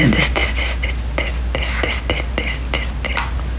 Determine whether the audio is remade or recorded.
recorded